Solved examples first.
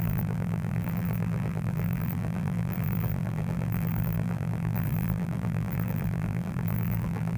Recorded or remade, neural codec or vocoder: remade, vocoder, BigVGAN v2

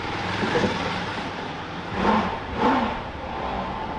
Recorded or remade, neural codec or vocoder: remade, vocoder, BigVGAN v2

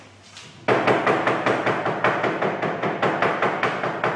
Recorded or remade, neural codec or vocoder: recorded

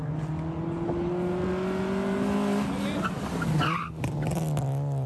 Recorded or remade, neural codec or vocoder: recorded